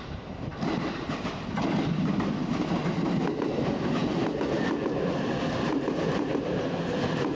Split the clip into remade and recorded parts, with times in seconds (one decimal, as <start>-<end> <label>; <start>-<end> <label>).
0.0-7.3 recorded